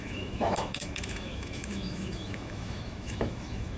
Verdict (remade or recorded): remade